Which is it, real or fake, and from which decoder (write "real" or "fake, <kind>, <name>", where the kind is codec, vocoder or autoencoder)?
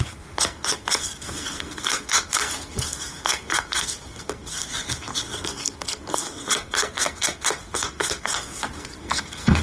fake, codec, SNAC